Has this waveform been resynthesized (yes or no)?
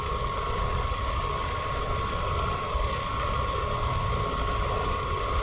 no